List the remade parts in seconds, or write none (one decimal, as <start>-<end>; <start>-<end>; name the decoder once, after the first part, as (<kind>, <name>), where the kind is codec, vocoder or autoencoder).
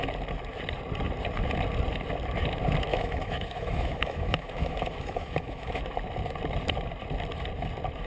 2.9-5.8 (autoencoder, DAC-VAE)